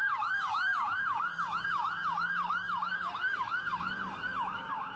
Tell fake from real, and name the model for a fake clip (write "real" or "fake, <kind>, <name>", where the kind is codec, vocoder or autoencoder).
fake, codec, DAC